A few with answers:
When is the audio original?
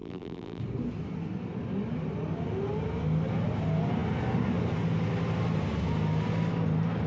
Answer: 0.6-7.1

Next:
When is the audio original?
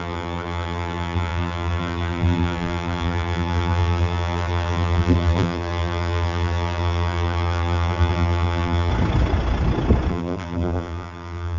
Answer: 8.9-10.1